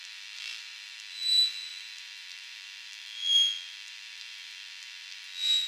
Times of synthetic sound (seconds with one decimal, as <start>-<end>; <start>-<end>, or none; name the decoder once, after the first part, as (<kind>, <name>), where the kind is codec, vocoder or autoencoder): 0.0-5.7 (vocoder, BigVGAN v2)